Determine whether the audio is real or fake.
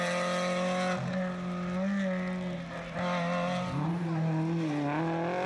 real